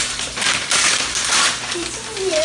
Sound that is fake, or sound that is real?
fake